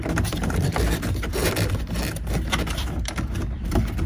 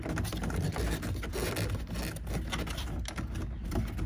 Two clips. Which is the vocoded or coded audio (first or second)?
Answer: first